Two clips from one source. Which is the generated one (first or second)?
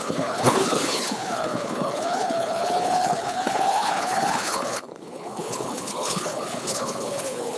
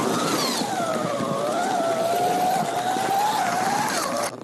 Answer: first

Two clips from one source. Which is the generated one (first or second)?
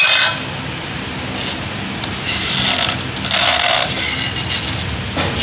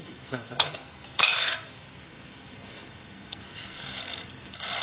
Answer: second